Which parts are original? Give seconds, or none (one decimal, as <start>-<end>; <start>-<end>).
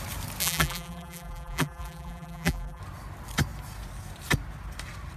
0.0-0.4; 2.8-5.2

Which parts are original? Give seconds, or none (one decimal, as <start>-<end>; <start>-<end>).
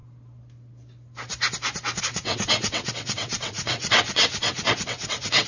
0.0-2.0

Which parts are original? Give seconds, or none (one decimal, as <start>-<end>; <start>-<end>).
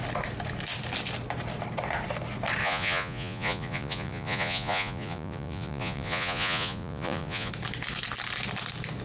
0.0-2.6; 7.5-9.0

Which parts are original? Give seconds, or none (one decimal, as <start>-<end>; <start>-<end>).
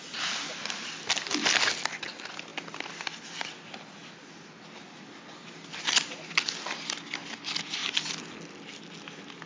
0.0-9.5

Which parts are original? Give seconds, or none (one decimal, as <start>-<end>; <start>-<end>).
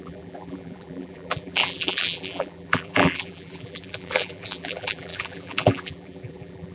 none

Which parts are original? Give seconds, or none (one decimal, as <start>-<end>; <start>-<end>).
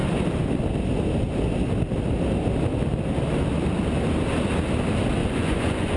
0.0-5.2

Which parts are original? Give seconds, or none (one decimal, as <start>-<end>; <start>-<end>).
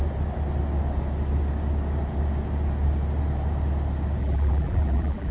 0.0-4.2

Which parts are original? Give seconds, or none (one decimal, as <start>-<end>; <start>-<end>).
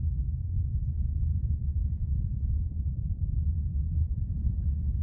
0.0-0.4; 3.4-4.0; 4.5-5.0